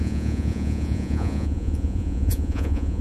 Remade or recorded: remade